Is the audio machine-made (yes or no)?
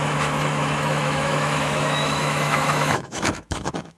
yes